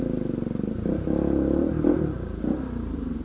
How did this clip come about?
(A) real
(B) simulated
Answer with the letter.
A